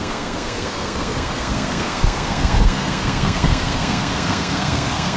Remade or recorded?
remade